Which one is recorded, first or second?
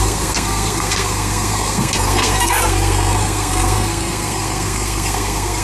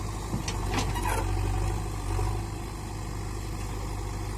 second